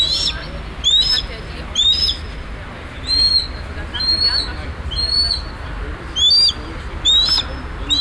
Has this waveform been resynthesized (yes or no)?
no